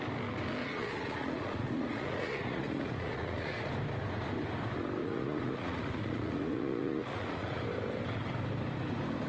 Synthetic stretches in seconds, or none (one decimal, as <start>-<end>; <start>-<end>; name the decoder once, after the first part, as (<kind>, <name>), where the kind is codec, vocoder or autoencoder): 0.6-3.7 (vocoder, Vocos); 5.0-7.6